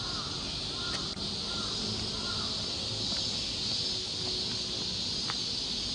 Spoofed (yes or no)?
no